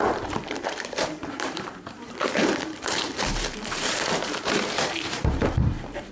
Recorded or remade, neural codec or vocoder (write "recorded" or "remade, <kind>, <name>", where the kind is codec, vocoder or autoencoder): remade, vocoder, BigVGAN v2